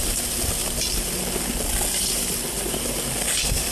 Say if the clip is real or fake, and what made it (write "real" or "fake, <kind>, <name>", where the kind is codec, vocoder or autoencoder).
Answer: real